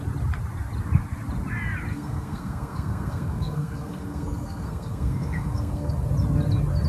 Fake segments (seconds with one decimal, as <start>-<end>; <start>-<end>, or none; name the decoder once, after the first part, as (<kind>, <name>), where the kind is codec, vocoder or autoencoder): 1.9-5.9 (codec, SNAC)